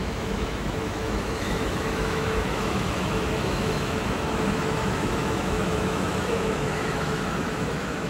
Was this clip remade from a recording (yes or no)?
yes